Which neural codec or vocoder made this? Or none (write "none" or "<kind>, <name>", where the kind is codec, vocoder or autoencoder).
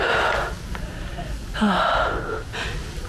none